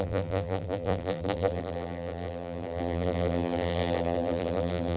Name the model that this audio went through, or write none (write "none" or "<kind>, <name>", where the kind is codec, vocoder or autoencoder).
vocoder, BigVGAN v2